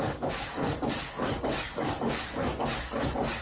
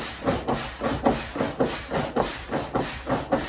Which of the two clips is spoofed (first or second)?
first